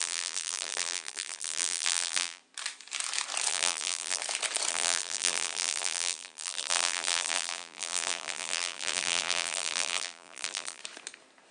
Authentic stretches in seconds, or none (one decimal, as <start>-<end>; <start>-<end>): 2.4-3.5; 4.2-4.7; 10.8-11.5